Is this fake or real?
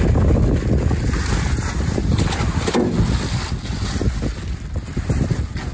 real